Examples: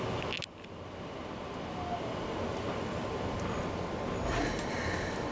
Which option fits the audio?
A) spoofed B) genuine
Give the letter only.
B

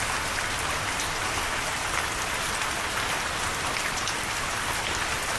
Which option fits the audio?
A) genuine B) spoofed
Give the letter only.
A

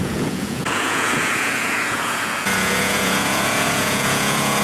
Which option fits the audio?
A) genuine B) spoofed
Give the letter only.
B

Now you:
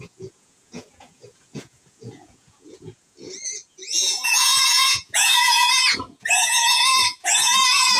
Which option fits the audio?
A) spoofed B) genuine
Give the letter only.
A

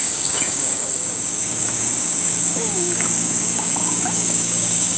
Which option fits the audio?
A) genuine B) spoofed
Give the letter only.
B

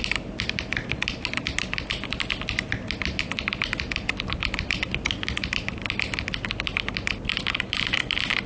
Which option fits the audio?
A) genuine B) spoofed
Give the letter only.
A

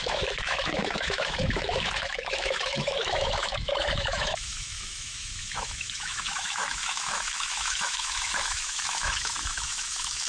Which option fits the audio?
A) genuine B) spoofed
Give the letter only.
B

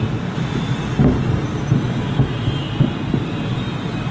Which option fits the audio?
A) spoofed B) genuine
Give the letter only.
B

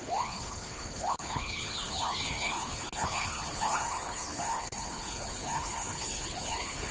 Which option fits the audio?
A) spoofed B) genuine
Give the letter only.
A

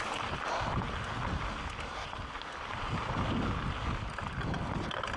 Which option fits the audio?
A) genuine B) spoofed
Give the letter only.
A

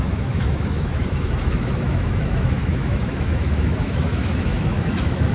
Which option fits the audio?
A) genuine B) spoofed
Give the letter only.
B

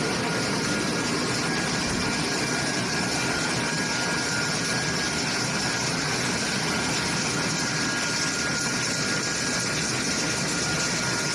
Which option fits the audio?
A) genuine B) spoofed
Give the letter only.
A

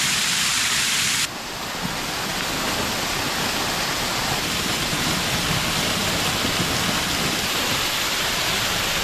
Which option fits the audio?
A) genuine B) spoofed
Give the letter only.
B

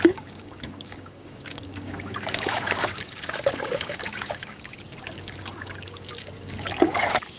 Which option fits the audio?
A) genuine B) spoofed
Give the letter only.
B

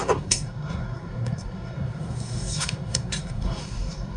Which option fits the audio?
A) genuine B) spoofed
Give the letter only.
B